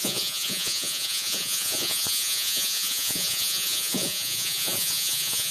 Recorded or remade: remade